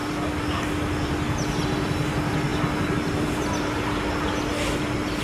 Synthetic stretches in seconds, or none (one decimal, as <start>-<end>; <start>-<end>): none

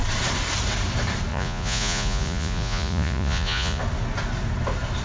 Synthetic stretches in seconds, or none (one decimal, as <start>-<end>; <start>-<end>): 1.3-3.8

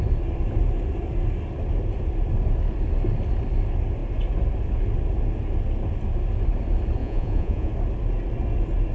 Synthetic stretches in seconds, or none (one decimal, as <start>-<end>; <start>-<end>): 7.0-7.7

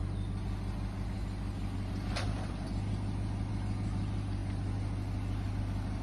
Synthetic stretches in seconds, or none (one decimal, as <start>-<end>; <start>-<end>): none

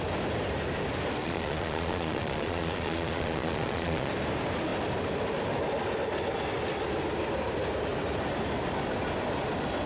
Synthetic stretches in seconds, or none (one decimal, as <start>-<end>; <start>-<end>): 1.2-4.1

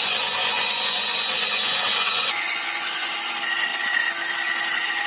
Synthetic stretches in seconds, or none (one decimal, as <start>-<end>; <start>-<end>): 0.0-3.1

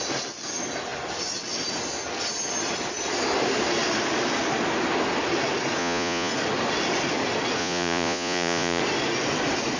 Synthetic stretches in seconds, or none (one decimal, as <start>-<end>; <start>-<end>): 5.8-6.3; 7.6-8.8

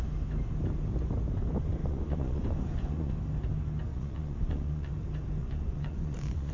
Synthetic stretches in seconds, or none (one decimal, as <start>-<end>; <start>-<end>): 1.8-3.1; 3.9-4.9; 5.4-6.5